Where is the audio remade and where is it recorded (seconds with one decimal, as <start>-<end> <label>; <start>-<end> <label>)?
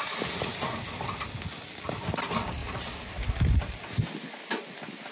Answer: 0.0-5.1 recorded